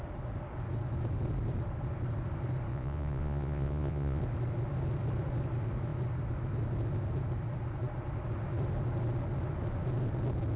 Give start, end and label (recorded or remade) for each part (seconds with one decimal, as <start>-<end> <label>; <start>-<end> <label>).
0.0-2.7 recorded; 2.7-4.2 remade; 4.2-10.6 recorded